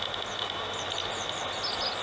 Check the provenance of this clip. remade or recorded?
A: recorded